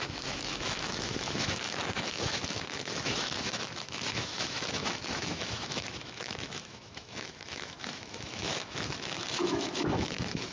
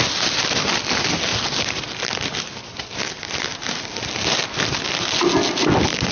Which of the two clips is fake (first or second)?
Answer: first